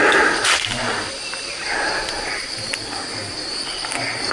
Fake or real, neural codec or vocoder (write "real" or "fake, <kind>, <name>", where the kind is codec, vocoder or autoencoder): fake, vocoder, BigVGAN v2